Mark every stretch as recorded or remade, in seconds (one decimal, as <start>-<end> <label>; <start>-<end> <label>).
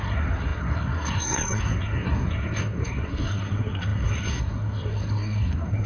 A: 0.0-5.9 remade